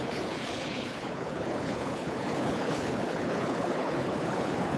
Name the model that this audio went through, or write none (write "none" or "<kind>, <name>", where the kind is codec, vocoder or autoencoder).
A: codec, HILCodec